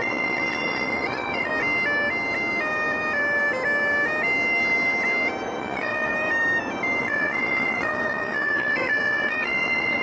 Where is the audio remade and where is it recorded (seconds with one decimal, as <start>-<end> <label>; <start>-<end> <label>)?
0.0-1.5 remade; 1.5-5.6 recorded; 5.6-6.1 remade; 6.1-7.0 recorded; 7.0-10.0 remade